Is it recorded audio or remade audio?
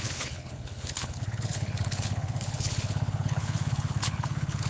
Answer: remade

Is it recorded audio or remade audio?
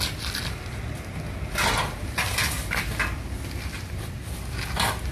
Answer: recorded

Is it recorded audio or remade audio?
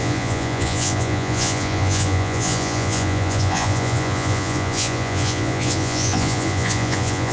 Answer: remade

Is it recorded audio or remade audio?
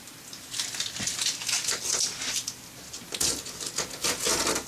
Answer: recorded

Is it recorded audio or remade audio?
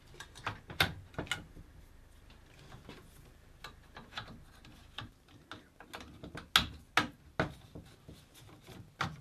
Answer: recorded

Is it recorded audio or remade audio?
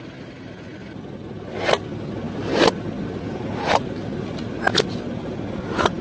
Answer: recorded